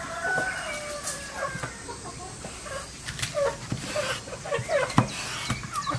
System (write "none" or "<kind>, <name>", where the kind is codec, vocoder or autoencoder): none